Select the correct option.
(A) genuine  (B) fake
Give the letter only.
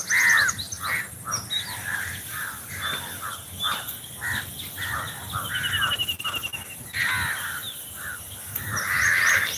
A